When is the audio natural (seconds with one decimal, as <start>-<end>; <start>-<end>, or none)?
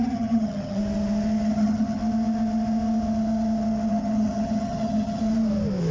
0.8-1.5; 2.0-3.9; 5.2-5.9